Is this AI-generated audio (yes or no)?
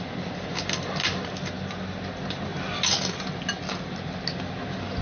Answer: no